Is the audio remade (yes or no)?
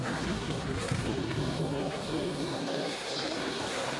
yes